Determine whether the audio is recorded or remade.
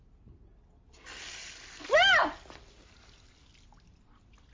recorded